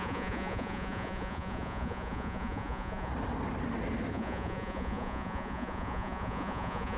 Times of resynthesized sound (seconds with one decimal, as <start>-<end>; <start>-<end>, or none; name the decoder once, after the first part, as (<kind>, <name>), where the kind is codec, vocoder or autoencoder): 0.0-3.1 (vocoder, Vocos); 4.1-7.0